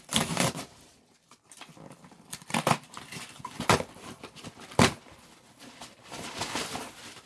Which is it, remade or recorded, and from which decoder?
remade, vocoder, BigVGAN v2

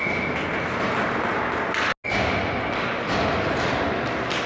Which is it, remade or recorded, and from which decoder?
recorded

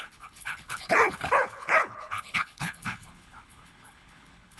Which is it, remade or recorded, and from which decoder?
remade, codec, HILCodec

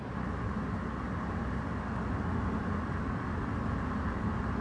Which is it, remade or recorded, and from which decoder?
recorded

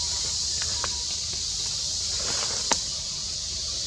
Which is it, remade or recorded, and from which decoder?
recorded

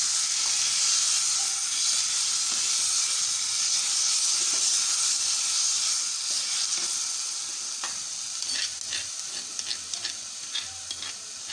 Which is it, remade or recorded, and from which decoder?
recorded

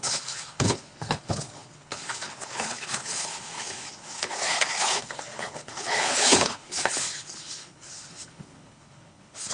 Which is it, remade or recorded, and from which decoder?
remade, codec, HILCodec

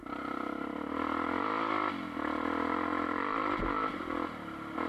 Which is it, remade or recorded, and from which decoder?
recorded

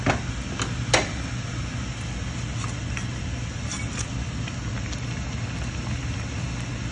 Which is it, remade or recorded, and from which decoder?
recorded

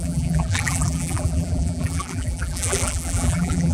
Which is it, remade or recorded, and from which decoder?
remade, vocoder, BigVGAN v2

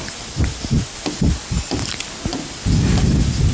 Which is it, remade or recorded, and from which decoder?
recorded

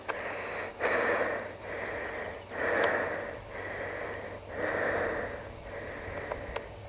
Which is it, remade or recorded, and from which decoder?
recorded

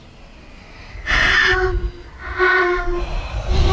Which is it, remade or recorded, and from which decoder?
recorded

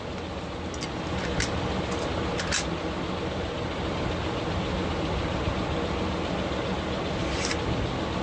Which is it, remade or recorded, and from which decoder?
recorded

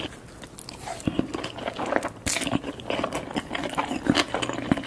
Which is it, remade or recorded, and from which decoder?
recorded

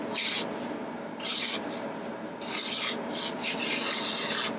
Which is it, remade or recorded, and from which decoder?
recorded